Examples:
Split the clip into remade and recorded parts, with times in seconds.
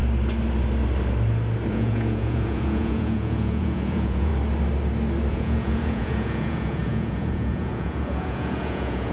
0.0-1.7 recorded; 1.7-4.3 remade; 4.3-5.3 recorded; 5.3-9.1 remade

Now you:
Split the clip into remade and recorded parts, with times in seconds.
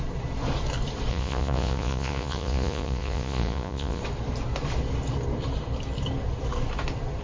0.0-1.1 recorded; 1.1-4.0 remade; 4.0-7.2 recorded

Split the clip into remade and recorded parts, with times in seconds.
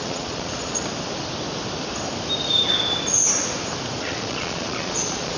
0.0-0.8 remade; 0.8-4.0 recorded; 4.0-5.4 remade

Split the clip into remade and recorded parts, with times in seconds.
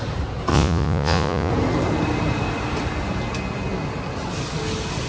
0.0-0.5 recorded; 0.5-1.5 remade; 1.5-5.1 recorded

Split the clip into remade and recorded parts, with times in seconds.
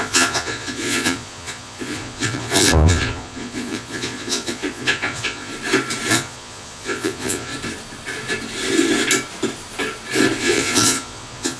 0.0-5.5 remade; 5.5-6.1 recorded; 6.1-7.5 remade; 7.5-10.4 recorded; 10.4-11.6 remade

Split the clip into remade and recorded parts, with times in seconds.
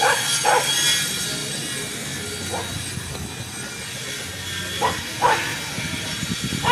0.0-5.5 recorded; 5.5-6.1 remade; 6.1-6.7 recorded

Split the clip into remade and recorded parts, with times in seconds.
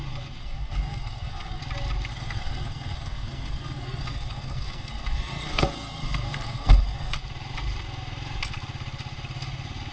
0.0-0.4 recorded; 0.4-1.6 remade; 1.6-2.1 recorded; 2.1-7.2 remade; 7.2-9.9 recorded